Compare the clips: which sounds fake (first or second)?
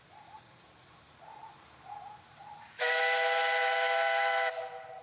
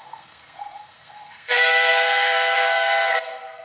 second